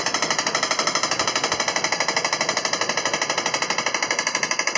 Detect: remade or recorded recorded